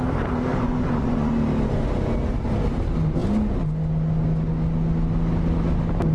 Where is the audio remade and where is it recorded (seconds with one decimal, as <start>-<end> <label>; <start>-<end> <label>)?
0.0-0.5 recorded; 0.5-1.3 remade; 1.3-6.1 recorded